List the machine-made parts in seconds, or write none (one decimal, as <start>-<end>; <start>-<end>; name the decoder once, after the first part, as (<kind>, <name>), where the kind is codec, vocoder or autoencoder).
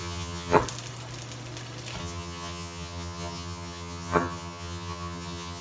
0.0-0.6 (vocoder, HiFi-GAN); 2.0-5.6